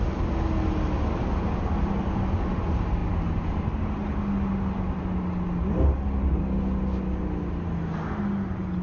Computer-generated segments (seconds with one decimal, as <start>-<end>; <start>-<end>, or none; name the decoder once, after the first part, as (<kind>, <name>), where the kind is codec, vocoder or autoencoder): none